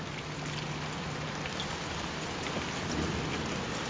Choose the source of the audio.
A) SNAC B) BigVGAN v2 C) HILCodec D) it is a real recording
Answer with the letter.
D